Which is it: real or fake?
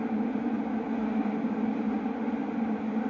real